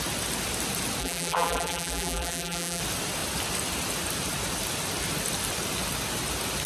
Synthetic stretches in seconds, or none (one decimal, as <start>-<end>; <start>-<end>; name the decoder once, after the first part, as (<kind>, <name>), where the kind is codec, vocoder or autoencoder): 1.0-2.8 (vocoder, BigVGAN v2)